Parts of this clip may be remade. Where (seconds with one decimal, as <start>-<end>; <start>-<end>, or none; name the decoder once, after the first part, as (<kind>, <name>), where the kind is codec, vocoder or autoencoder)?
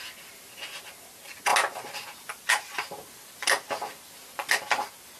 none